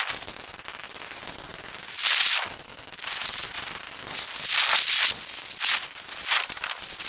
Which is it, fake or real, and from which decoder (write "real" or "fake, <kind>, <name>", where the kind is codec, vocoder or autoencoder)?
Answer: real